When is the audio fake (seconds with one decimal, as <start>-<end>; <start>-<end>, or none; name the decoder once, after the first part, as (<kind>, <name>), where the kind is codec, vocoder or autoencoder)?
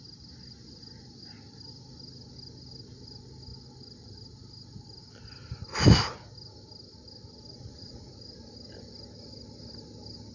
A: 7.5-8.1 (vocoder, Vocos)